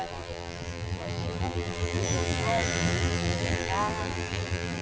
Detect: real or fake fake